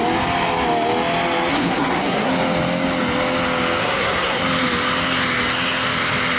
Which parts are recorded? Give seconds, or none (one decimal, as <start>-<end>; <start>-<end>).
0.0-1.5; 2.3-3.8; 4.4-6.4